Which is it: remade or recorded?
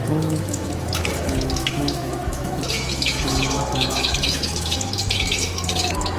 remade